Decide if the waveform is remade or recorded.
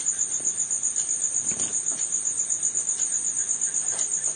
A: recorded